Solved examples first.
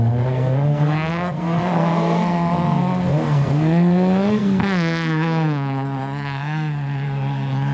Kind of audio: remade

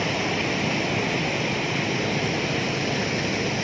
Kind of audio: recorded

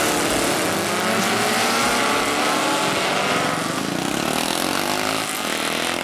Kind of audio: recorded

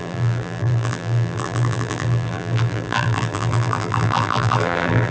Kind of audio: remade